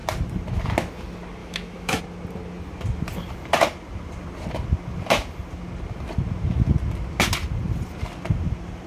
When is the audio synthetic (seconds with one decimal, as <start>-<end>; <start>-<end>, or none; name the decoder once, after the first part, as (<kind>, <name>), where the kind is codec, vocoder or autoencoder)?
1.4-2.0 (autoencoder, DAC-VAE)